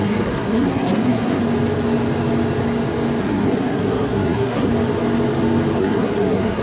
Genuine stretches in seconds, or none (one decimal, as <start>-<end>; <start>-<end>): 1.4-3.2; 4.7-5.8